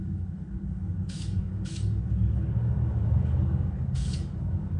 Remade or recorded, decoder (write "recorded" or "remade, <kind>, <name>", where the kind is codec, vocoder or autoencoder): remade, codec, DAC